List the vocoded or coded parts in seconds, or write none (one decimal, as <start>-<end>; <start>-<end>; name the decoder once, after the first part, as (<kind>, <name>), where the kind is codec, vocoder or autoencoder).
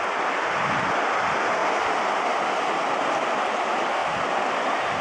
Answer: none